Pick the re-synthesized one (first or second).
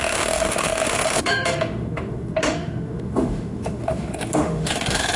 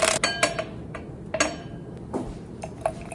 first